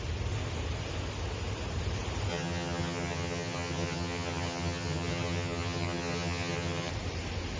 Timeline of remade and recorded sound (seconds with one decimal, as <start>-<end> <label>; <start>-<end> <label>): 0.0-2.3 recorded; 2.3-6.9 remade; 6.9-7.6 recorded